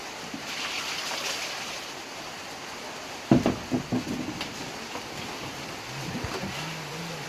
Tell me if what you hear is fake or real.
real